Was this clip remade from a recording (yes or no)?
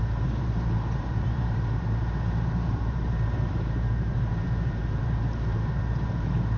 yes